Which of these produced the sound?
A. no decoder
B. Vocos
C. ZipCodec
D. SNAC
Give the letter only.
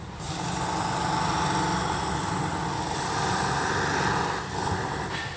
A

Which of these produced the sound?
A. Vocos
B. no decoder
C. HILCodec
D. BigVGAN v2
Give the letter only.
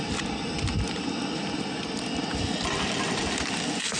B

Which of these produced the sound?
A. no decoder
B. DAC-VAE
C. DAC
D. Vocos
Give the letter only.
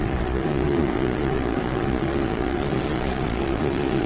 D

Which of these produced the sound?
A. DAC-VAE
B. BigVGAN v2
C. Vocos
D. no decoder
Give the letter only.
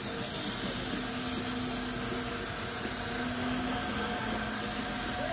D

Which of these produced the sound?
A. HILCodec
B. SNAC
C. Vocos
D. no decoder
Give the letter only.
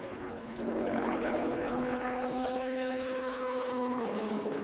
A